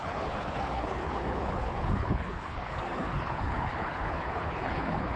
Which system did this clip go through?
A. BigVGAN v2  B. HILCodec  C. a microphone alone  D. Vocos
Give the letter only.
B